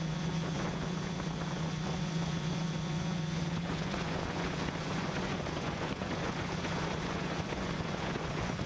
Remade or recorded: remade